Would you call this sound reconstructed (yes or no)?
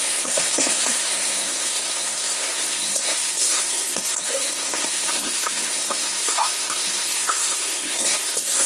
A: yes